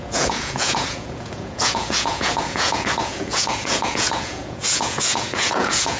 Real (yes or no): no